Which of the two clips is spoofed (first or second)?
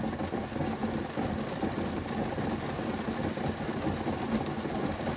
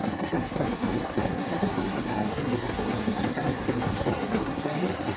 second